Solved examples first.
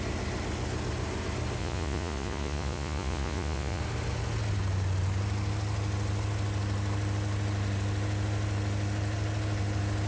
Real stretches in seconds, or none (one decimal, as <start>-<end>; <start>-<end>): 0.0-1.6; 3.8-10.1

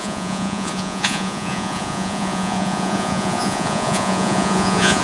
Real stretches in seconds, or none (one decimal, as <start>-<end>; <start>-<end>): none

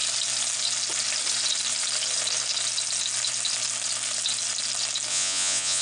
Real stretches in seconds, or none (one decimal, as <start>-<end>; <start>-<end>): 0.0-5.1

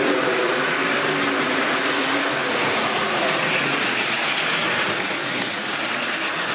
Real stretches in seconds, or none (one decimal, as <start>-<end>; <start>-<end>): 0.8-1.4